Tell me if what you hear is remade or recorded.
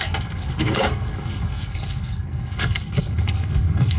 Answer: remade